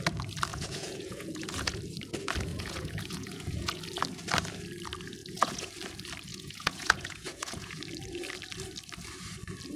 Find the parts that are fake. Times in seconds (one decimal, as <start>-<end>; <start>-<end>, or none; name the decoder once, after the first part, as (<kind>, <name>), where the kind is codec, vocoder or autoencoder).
0.5-1.8 (vocoder, Vocos); 2.5-3.8; 5.2-5.7; 6.3-7.8